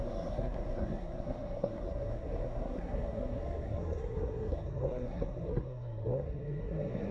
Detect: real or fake fake